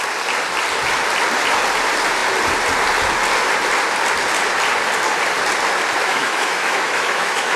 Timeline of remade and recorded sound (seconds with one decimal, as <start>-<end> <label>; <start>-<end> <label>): 0.0-6.0 recorded; 6.0-7.6 remade

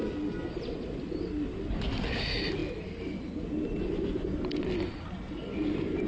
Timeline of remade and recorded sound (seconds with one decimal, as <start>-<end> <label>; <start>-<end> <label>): 0.0-6.1 recorded

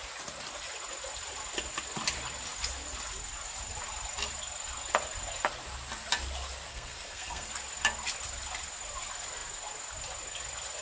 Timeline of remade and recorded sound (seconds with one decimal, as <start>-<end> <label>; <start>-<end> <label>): 0.0-6.7 recorded; 6.7-7.5 remade; 7.5-10.8 recorded

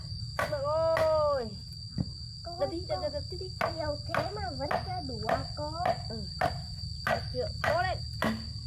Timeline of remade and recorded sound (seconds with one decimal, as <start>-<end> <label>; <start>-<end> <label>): 0.0-8.7 recorded

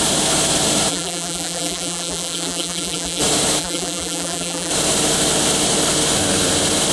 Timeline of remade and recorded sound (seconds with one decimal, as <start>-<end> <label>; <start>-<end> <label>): 0.0-0.9 recorded; 0.9-3.2 remade; 3.2-3.6 recorded; 3.6-4.7 remade; 4.7-6.9 recorded

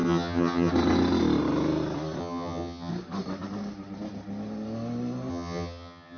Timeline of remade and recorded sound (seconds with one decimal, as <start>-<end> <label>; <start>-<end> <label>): 0.0-0.7 remade; 0.7-2.2 recorded; 2.2-2.9 remade; 2.9-5.3 recorded; 5.3-6.2 remade